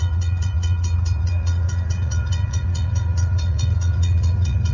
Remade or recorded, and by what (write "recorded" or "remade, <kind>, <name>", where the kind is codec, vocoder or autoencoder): remade, vocoder, Vocos